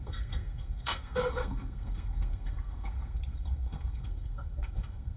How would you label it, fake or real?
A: fake